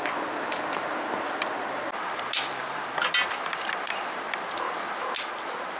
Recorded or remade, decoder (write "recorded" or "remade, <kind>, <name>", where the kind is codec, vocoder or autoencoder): recorded